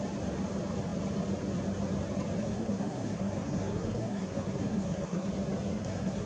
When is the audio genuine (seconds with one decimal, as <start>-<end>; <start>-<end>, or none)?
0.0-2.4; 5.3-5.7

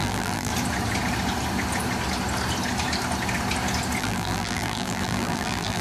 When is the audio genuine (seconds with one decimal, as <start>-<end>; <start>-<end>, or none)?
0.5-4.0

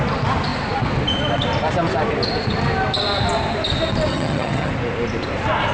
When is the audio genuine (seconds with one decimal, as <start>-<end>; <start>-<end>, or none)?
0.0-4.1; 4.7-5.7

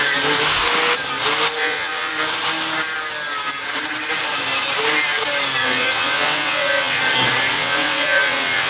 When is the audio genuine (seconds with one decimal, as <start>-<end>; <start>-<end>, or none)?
0.0-1.6; 2.1-5.6; 7.0-7.5

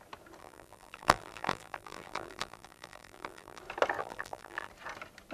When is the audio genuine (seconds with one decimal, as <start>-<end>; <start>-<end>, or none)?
0.0-0.4; 3.6-4.0; 4.7-5.3

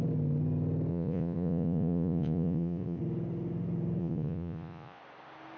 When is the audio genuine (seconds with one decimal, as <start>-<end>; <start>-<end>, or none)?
0.0-0.9; 3.0-4.0; 5.0-5.6

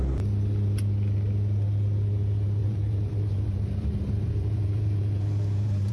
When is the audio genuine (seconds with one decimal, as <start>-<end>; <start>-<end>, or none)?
0.0-2.6

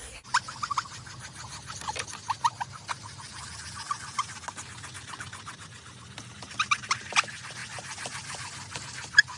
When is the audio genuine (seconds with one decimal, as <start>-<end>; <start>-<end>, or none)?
0.0-9.4